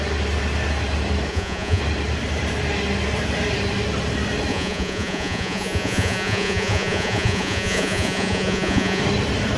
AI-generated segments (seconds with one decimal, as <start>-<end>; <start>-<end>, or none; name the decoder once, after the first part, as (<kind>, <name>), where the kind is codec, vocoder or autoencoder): 1.3-1.8 (vocoder, Vocos); 4.5-9.0